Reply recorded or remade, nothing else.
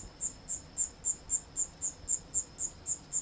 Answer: recorded